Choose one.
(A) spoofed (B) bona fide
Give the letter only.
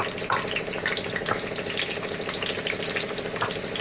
B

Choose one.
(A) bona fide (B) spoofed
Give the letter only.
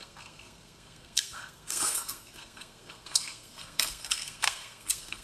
B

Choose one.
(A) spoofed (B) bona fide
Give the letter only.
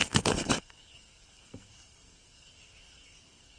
A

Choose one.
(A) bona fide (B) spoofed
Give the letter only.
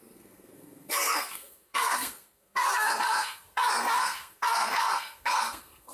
B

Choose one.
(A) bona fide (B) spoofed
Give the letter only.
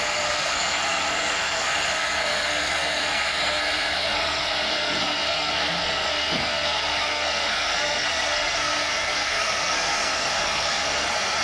B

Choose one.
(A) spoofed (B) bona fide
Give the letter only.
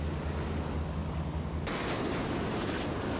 B